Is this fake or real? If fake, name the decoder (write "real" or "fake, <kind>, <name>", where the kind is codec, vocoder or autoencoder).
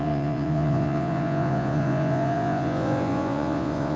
fake, vocoder, Vocos